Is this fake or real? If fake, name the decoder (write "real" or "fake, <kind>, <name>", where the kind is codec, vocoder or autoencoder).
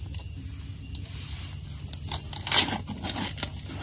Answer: real